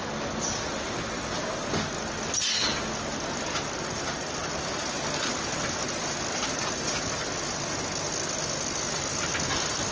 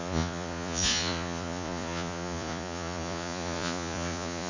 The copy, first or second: second